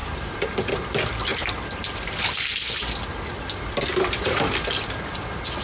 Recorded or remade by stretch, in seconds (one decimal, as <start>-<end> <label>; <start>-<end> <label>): 0.0-1.3 remade; 1.3-1.9 recorded; 1.9-2.5 remade; 2.5-3.6 recorded; 3.6-5.6 remade